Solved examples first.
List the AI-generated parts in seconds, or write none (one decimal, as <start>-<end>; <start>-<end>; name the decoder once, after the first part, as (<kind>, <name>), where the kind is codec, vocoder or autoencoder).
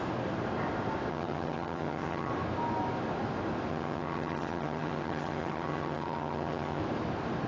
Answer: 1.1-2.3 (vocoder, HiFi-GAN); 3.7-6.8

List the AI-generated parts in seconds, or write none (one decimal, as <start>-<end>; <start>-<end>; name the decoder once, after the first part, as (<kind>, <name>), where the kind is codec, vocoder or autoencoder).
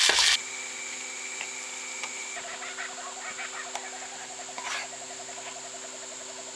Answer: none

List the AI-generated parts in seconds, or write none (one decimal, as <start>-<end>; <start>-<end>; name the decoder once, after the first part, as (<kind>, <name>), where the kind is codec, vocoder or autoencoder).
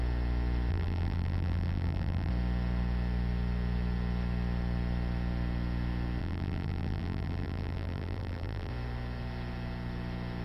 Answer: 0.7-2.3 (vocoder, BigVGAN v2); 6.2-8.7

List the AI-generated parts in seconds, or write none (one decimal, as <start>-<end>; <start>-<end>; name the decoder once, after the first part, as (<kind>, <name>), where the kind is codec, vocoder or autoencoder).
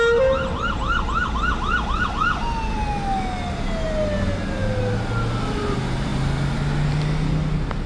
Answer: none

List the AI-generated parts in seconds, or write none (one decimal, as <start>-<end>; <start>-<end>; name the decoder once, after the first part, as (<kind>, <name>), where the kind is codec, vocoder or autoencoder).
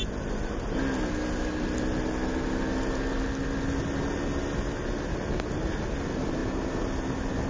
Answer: none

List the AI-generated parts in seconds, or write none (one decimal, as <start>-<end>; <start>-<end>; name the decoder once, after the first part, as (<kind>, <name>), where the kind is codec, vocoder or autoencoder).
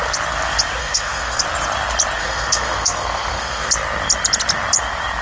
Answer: 0.8-1.4 (codec, SNAC); 2.2-3.7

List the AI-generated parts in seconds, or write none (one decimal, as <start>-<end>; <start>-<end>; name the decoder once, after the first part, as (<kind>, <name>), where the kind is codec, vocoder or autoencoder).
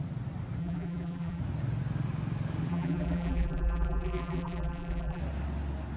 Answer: 0.6-1.4 (vocoder, BigVGAN v2); 2.7-5.2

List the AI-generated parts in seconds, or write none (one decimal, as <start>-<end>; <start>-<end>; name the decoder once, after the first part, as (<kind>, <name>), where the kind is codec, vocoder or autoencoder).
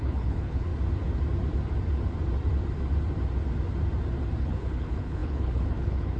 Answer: 0.0-0.7 (codec, HILCodec); 4.4-6.2